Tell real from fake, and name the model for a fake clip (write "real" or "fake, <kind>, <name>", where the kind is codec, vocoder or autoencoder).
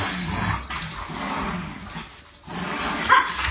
real